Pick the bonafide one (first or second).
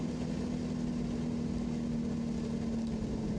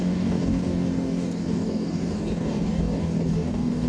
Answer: first